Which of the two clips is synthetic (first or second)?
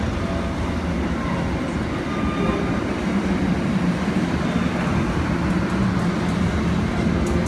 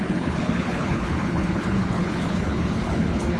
second